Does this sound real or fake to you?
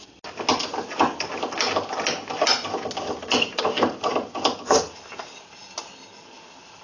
real